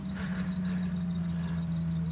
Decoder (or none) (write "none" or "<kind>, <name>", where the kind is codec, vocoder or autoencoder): none